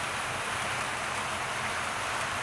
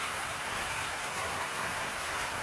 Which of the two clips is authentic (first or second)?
first